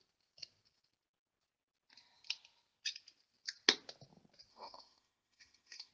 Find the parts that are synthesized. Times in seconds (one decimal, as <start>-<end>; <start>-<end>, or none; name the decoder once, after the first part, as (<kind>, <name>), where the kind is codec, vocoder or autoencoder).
4.5-5.9 (autoencoder, DAC-VAE)